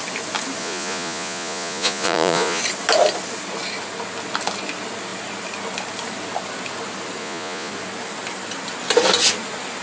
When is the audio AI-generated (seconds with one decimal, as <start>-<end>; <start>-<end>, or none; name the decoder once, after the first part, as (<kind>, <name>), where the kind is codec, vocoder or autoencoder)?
0.6-2.6 (vocoder, Vocos); 7.2-7.7